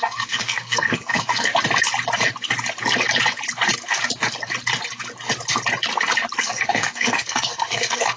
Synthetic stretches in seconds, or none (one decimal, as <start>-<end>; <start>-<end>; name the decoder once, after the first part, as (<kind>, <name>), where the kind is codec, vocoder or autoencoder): 0.0-1.5 (codec, SNAC); 6.4-8.2